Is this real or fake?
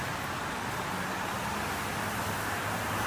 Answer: real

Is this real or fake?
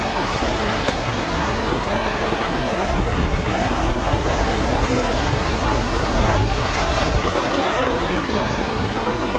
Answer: fake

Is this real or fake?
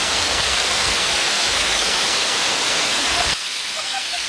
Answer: fake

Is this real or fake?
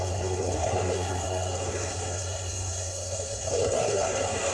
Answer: fake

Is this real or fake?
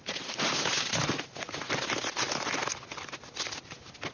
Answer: real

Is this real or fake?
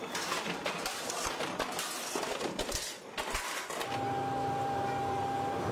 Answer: real